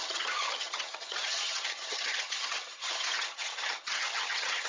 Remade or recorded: remade